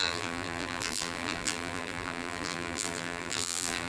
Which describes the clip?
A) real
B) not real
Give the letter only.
B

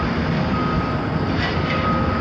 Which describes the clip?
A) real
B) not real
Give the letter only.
A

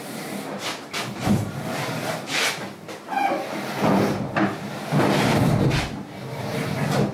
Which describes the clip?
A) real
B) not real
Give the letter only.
B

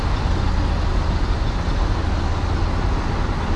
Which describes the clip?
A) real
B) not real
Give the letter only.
A